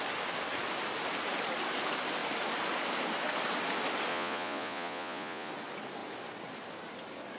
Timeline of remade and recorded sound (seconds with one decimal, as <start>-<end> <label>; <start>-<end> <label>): 0.0-4.1 recorded; 4.1-5.5 remade; 5.5-7.4 recorded